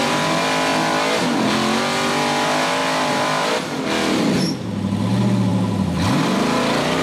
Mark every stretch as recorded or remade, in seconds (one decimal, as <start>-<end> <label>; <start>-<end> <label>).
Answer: 0.0-7.0 recorded